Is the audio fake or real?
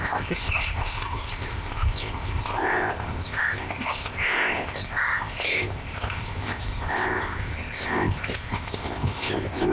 fake